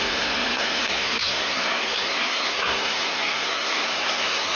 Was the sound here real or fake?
fake